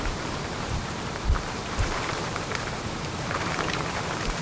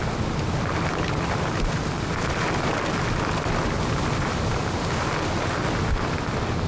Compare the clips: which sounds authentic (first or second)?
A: second